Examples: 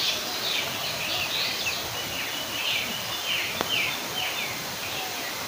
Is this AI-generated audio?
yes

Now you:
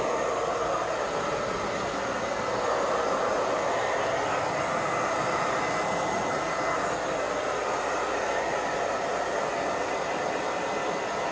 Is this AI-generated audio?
no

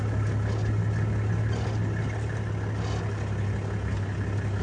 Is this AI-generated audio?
no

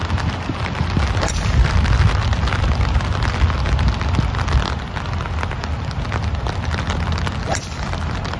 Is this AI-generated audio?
no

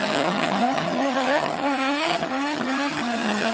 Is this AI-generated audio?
yes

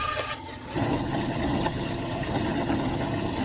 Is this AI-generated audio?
yes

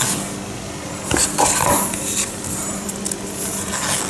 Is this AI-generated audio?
no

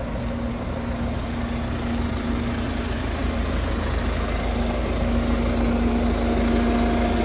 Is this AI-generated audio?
no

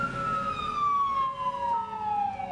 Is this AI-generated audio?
no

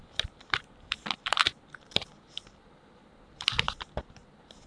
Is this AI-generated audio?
yes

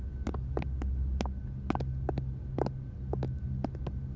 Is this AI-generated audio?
no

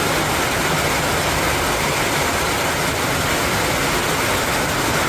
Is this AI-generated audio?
no